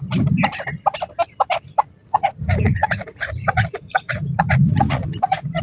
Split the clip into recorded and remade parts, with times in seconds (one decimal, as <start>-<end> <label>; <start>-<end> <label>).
0.0-2.0 recorded; 2.0-5.6 remade